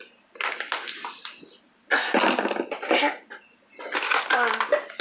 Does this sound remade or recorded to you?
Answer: recorded